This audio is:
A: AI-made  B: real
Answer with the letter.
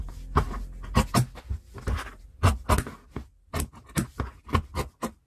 B